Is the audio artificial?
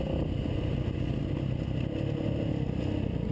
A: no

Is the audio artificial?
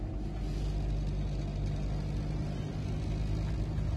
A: no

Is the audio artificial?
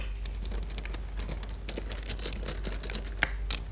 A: no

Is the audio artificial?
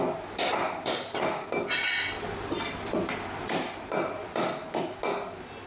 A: no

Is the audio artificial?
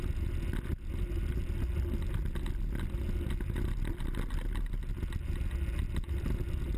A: no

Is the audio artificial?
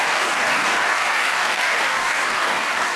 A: yes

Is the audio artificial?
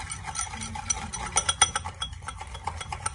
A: no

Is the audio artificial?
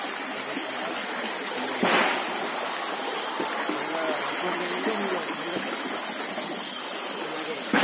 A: no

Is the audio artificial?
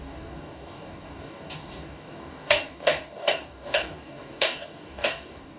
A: yes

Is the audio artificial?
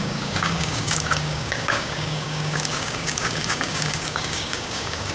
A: yes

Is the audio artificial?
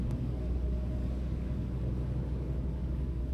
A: yes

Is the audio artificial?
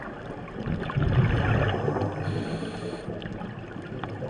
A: no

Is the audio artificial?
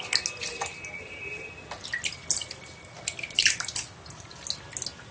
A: no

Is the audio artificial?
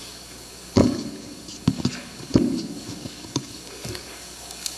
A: yes